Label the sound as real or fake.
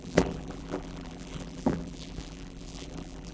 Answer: fake